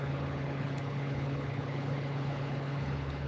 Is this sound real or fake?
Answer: fake